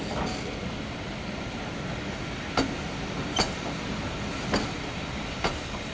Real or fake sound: real